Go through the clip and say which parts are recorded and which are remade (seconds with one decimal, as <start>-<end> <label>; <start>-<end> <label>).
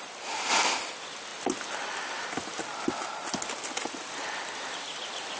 0.0-5.4 recorded